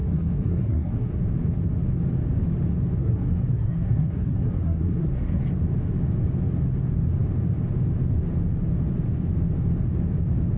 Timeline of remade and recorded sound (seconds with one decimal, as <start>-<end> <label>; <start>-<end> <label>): 0.0-1.1 remade; 1.1-3.0 recorded; 3.0-5.4 remade; 5.4-10.6 recorded